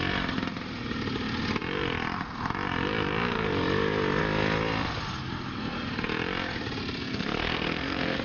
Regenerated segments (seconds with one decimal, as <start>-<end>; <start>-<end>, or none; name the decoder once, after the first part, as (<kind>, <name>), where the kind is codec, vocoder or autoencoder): 7.0-8.2 (codec, SNAC)